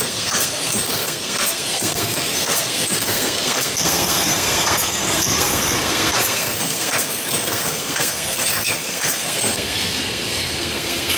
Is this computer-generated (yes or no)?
yes